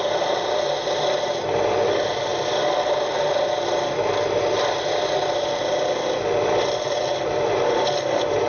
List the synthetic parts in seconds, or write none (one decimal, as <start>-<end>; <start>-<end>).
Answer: none